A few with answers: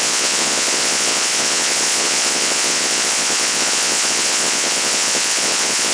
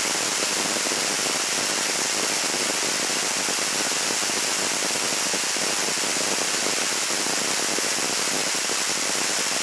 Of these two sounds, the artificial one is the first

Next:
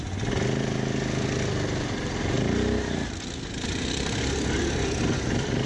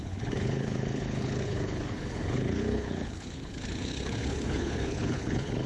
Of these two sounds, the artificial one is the second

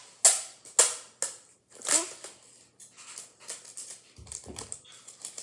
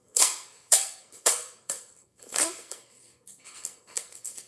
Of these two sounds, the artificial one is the second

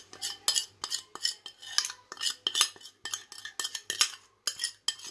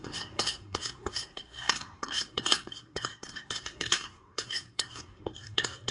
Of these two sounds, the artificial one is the second